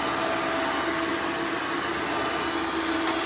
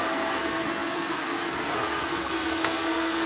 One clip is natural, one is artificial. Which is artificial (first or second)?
second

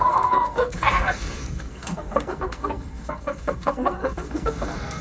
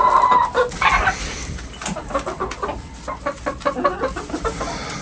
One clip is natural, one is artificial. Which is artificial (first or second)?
first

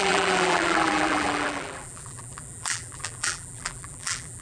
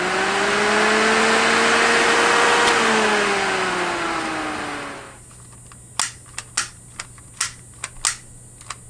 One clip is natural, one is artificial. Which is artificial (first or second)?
first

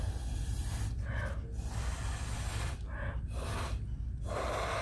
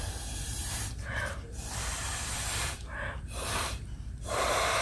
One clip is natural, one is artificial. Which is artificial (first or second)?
second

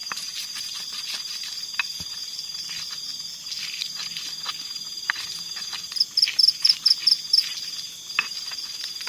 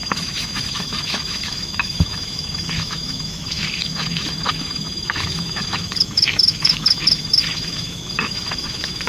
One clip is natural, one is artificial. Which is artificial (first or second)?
second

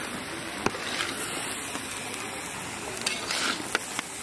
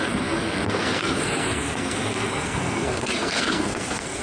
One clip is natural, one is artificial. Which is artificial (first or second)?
second